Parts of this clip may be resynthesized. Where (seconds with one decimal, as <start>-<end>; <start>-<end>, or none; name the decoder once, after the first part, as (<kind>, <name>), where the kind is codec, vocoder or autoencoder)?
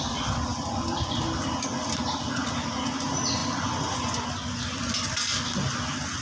0.0-2.4 (vocoder, BigVGAN v2); 2.9-3.4; 4.8-6.2